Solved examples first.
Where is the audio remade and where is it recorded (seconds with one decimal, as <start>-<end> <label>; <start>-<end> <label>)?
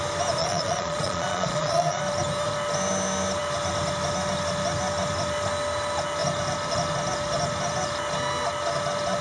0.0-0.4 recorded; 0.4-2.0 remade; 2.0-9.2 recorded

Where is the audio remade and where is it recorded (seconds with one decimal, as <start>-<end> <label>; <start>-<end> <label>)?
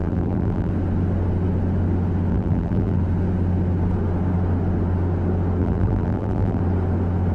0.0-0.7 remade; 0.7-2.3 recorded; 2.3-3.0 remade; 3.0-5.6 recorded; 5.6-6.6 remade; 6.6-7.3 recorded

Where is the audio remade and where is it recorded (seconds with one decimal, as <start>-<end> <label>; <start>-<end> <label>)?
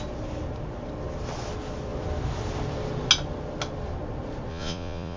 0.0-4.5 recorded; 4.5-5.2 remade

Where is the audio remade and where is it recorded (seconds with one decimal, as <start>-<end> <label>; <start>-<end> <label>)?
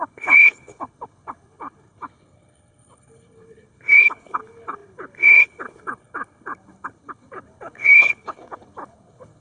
0.0-9.4 remade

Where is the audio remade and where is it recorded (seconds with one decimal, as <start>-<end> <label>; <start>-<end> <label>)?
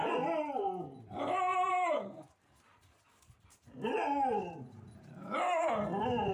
0.0-1.5 recorded; 1.5-4.9 remade; 4.9-6.3 recorded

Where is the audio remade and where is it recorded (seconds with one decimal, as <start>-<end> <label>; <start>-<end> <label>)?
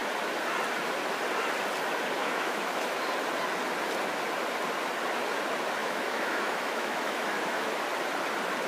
0.0-2.2 recorded; 2.2-3.0 remade; 3.0-5.8 recorded; 5.8-7.8 remade; 7.8-8.7 recorded